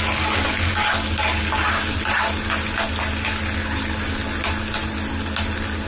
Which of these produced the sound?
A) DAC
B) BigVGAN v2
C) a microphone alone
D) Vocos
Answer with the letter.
C